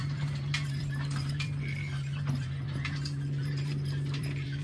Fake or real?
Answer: fake